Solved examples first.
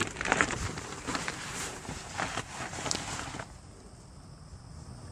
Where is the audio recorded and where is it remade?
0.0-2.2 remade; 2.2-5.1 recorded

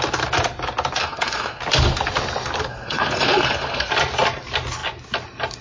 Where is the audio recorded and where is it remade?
0.0-1.0 recorded; 1.0-1.6 remade; 1.6-2.7 recorded; 2.7-3.9 remade; 3.9-5.6 recorded

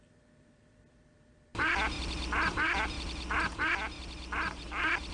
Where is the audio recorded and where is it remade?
0.0-5.1 remade

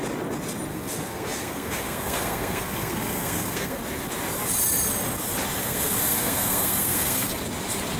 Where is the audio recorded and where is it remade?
0.0-0.7 recorded; 0.7-3.8 remade; 3.8-5.6 recorded; 5.6-7.3 remade; 7.3-8.0 recorded

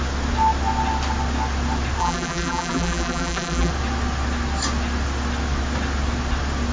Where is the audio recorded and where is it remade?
0.0-2.0 recorded; 2.0-3.7 remade; 3.7-6.7 recorded

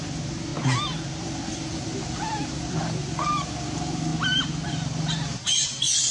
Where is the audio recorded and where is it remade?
0.0-0.5 remade; 0.5-1.2 recorded; 1.2-4.1 remade; 4.1-4.7 recorded; 4.7-6.1 remade

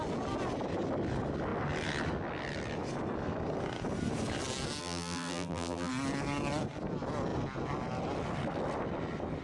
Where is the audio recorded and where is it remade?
0.0-4.8 recorded; 4.8-5.9 remade; 5.9-9.4 recorded